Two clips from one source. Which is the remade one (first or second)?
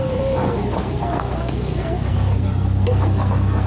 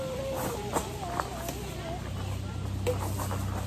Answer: first